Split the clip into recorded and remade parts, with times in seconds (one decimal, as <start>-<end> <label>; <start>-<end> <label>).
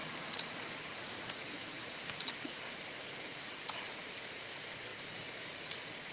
0.0-6.1 remade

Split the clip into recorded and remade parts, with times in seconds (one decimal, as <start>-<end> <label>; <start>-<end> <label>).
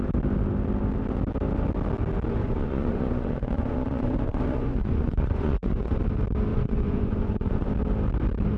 0.0-2.4 recorded; 2.4-6.0 remade; 6.0-6.5 recorded; 6.5-7.7 remade; 7.7-8.6 recorded